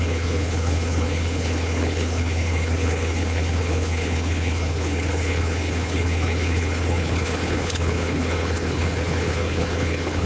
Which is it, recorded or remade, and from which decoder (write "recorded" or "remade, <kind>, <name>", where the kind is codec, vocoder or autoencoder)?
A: remade, codec, HILCodec